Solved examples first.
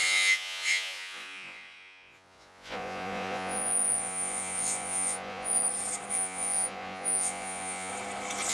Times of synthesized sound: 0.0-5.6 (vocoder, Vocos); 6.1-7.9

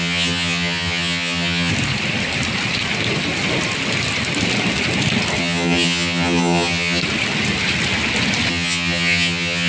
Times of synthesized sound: 0.0-1.7 (vocoder, HiFi-GAN); 5.4-7.0; 8.5-9.7

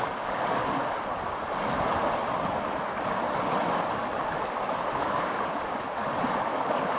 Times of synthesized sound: 0.0-0.8 (codec, DAC); 5.0-6.0; 6.5-7.0

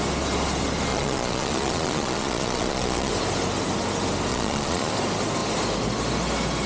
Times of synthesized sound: 0.9-3.1 (vocoder, Vocos); 4.3-4.9

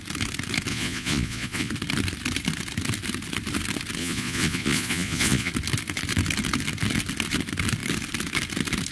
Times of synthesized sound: 0.7-1.7 (vocoder, Vocos); 4.0-5.5

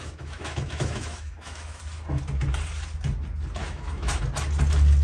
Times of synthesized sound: 0.0-1.8 (autoencoder, DAC-VAE); 3.6-4.2

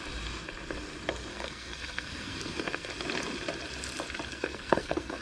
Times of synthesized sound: 1.3-2.9 (codec, SNAC); 4.3-5.2

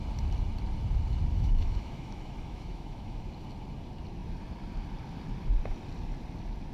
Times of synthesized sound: 1.3-3.3 (autoencoder, DAC-VAE)